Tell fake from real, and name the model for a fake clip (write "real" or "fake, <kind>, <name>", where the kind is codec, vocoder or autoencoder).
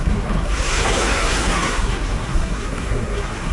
fake, codec, SNAC